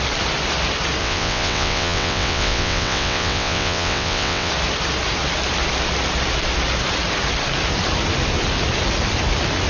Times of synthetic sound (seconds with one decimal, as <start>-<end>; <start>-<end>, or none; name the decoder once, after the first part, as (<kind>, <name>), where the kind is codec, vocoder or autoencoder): 1.0-4.5 (vocoder, WaveNeXt)